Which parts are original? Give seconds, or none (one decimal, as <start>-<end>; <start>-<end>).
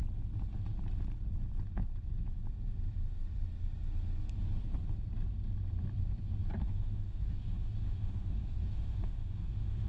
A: 0.0-6.6